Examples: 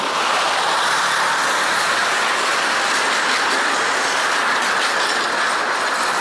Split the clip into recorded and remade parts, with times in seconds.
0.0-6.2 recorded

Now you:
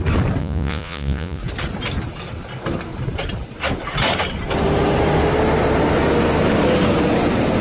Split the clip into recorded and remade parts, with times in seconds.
0.0-0.4 recorded; 0.4-1.4 remade; 1.4-7.6 recorded